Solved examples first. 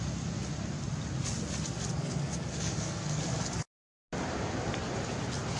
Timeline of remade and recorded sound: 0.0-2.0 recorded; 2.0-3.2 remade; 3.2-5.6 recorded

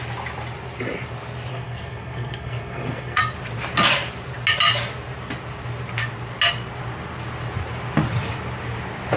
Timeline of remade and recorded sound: 0.0-1.5 recorded; 1.5-3.2 remade; 3.2-9.2 recorded

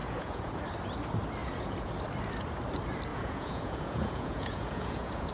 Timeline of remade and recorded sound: 0.0-0.6 remade; 0.6-1.4 recorded; 1.4-1.9 remade; 1.9-3.1 recorded; 3.1-5.3 remade

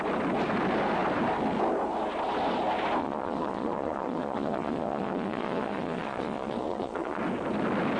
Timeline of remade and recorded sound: 0.0-3.0 recorded; 3.0-7.2 remade; 7.2-8.0 recorded